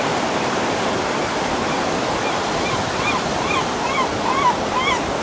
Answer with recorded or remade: remade